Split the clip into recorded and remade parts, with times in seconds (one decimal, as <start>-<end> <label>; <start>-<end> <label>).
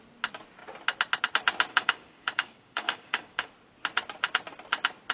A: 0.0-1.7 recorded; 1.7-3.5 remade; 3.5-5.1 recorded